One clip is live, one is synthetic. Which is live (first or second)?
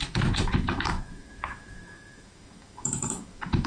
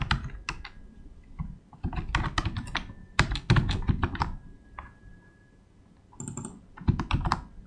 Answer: second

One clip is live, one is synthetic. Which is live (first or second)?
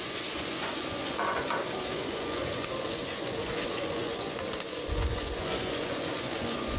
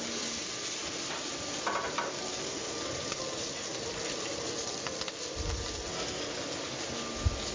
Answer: second